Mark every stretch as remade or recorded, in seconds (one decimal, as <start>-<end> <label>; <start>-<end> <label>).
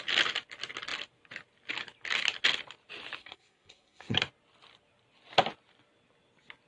0.0-3.2 recorded; 3.2-4.2 remade; 4.2-6.7 recorded